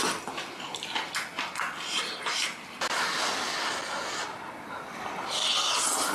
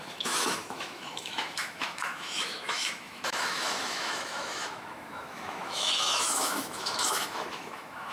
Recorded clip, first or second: first